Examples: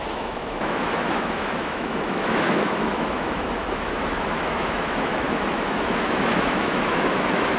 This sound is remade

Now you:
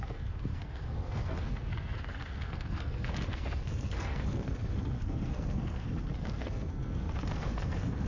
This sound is remade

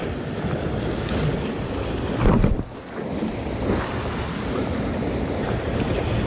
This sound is recorded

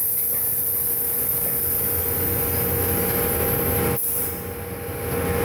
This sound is recorded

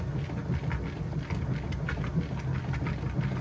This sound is recorded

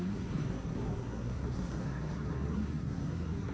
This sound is remade